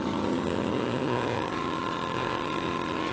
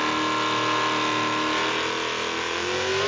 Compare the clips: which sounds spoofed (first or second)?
first